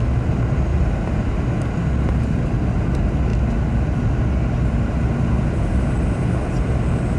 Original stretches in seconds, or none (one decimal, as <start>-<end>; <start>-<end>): 0.0-0.7; 1.6-7.2